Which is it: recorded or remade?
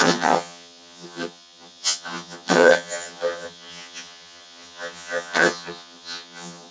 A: remade